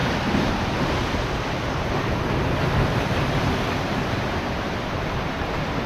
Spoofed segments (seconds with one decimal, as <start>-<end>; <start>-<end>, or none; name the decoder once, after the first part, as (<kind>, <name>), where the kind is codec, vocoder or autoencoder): 2.7-5.9 (vocoder, BigVGAN v2)

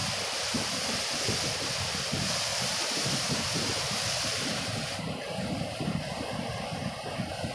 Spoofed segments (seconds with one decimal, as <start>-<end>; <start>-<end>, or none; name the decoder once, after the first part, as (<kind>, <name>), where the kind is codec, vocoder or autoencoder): 2.5-6.9 (vocoder, BigVGAN v2)